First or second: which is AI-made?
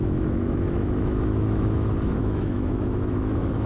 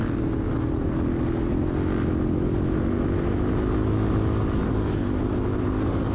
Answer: first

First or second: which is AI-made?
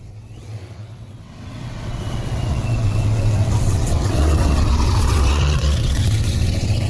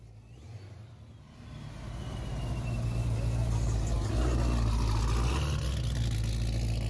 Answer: first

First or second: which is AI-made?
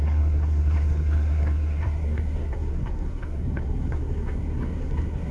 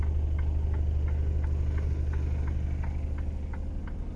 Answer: first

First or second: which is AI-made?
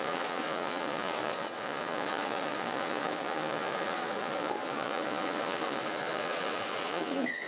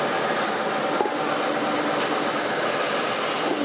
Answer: first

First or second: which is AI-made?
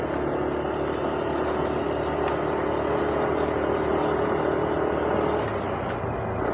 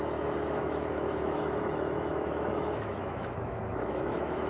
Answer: second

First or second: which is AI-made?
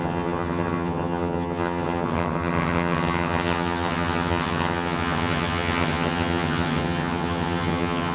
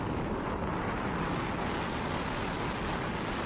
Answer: first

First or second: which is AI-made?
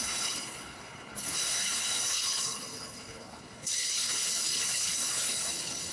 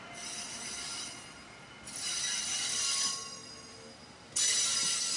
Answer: first